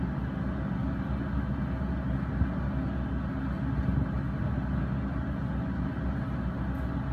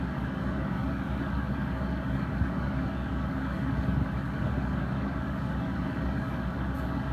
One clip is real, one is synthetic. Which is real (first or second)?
first